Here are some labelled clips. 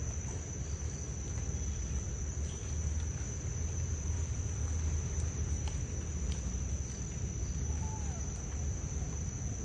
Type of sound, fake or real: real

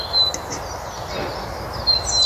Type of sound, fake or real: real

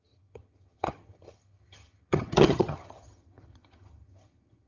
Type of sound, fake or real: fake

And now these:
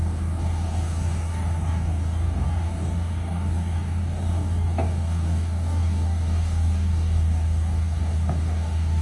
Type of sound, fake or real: fake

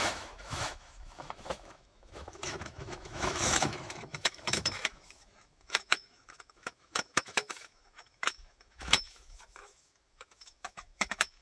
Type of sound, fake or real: fake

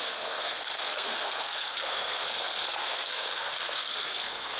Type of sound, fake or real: fake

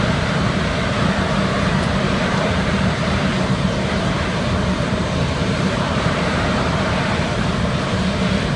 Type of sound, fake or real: fake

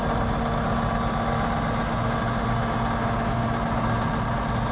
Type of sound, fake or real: real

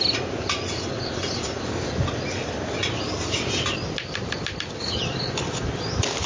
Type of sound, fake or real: real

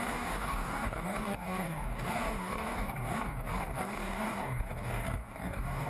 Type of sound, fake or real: fake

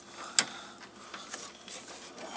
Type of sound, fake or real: real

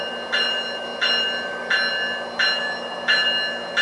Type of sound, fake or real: real